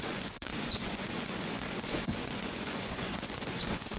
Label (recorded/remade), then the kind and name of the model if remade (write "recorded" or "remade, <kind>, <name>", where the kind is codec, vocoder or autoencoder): remade, vocoder, Vocos